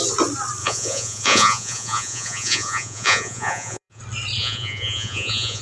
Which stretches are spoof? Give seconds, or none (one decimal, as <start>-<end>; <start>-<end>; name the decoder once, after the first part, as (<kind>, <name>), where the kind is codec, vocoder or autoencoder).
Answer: 0.6-4.0 (vocoder, Vocos); 4.4-5.6